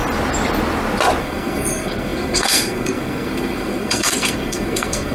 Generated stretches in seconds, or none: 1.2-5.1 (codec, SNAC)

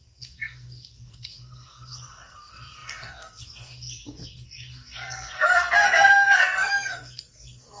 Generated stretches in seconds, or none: 0.0-7.8 (codec, SNAC)